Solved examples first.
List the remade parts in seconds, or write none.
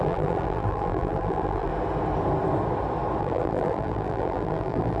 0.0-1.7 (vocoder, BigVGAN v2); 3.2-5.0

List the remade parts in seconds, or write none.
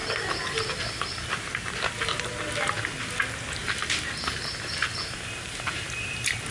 4.8-6.5 (vocoder, BigVGAN v2)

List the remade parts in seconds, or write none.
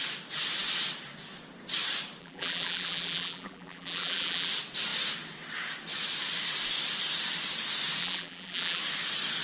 2.2-4.5 (vocoder, BigVGAN v2); 8.0-8.8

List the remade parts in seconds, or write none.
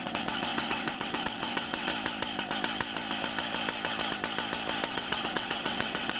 0.0-1.9 (vocoder, WaveNeXt); 4.9-6.2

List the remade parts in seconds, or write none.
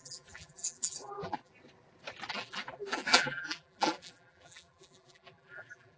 0.0-1.5 (vocoder, BigVGAN v2); 2.3-6.0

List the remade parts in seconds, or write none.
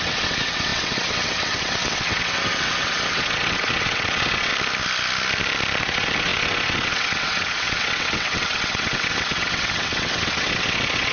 0.0-4.5 (vocoder, WaveNeXt); 5.8-11.1